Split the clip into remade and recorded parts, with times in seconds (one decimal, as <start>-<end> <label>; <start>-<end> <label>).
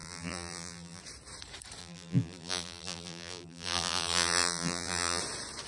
0.0-1.0 remade; 1.0-1.8 recorded; 1.8-5.2 remade; 5.2-5.7 recorded